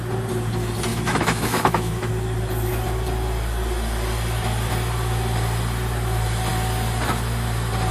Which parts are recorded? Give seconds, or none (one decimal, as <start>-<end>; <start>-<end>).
0.0-0.9; 2.1-7.9